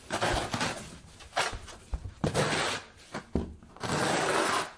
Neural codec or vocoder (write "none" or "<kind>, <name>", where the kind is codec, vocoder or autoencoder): none